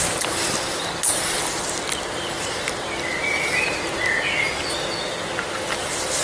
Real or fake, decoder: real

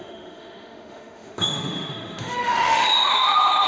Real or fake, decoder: fake, autoencoder, DAC-VAE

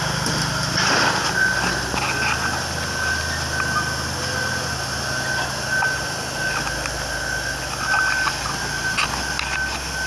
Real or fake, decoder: real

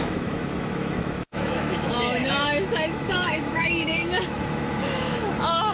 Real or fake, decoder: fake, autoencoder, DAC-VAE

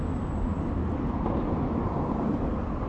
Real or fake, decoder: real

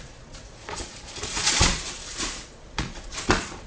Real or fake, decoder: fake, vocoder, Vocos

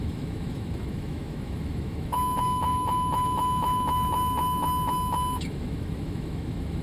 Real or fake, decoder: fake, autoencoder, DAC-VAE